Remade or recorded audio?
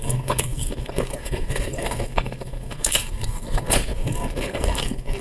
remade